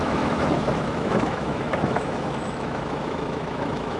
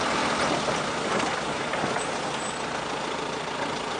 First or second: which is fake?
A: first